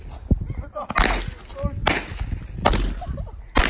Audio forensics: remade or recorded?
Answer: recorded